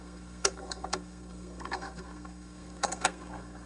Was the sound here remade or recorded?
remade